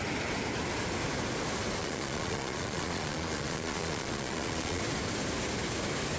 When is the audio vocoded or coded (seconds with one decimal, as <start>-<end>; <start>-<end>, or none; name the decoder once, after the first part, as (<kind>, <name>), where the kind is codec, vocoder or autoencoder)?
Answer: 1.8-4.8 (vocoder, Vocos)